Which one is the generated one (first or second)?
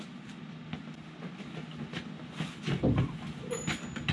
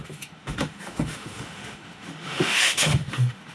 second